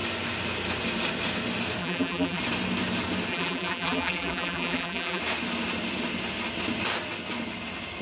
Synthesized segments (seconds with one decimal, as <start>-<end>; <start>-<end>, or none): 1.8-2.4; 3.3-5.2